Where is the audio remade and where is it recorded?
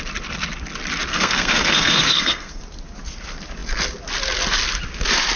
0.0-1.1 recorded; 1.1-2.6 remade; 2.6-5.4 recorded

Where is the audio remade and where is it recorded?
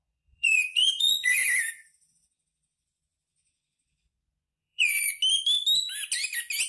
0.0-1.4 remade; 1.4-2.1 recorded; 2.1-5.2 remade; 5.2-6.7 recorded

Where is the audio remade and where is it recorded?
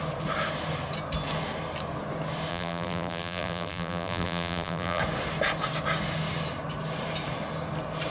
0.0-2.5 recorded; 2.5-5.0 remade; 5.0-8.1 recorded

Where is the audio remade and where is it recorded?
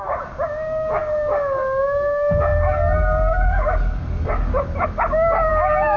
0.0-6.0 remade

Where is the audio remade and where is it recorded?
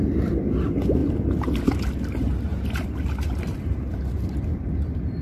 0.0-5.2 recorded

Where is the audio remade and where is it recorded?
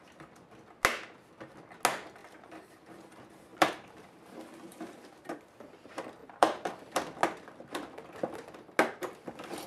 0.0-2.2 recorded; 2.2-2.7 remade; 2.7-3.5 recorded; 3.5-4.2 remade; 4.2-4.7 recorded; 4.7-5.4 remade; 5.4-6.2 recorded; 6.2-6.7 remade; 6.7-9.7 recorded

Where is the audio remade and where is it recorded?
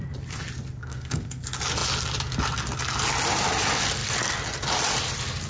0.0-0.8 recorded; 0.8-1.4 remade; 1.4-5.5 recorded